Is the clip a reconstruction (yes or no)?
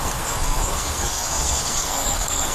yes